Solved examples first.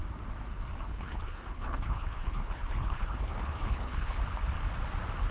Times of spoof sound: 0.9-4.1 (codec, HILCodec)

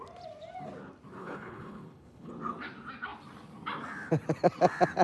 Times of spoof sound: 1.2-2.3 (codec, HILCodec)

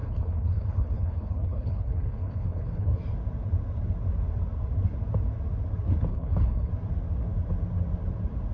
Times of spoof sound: 0.0-3.0 (codec, HILCodec); 6.1-6.7

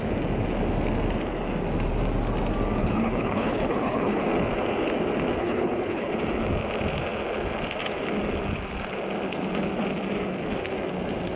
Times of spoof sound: 2.8-4.2 (codec, HILCodec); 5.4-6.1

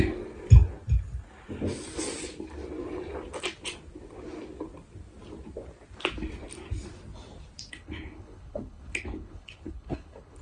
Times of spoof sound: 7.7-10.4 (codec, HILCodec)

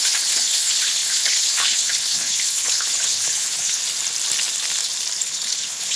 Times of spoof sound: 0.0-3.8 (codec, HILCodec); 5.2-6.0

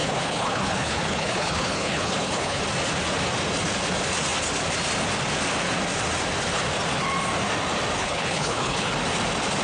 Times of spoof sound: 0.0-2.6 (codec, HILCodec); 8.0-8.9